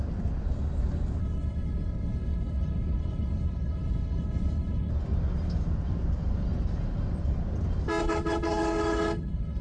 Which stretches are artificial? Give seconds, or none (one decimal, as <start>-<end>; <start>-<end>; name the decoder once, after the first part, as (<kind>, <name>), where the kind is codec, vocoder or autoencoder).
1.2-4.9 (codec, HILCodec); 8.0-9.6